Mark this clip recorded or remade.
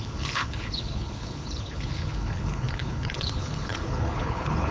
remade